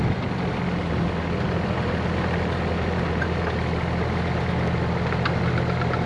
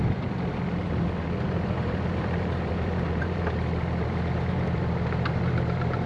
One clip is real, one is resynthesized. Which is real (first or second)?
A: first